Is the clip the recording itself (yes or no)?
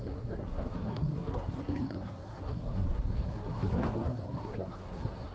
no